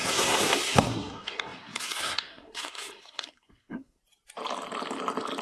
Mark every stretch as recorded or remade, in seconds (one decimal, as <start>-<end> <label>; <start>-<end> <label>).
0.0-4.0 remade; 4.0-5.4 recorded